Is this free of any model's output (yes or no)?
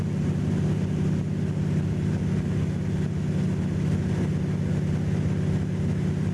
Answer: yes